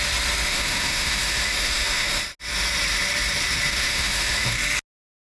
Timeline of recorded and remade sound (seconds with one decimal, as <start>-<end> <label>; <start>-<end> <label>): 0.0-0.5 recorded; 0.5-2.2 remade; 2.2-3.7 recorded; 3.7-4.6 remade; 4.6-5.3 recorded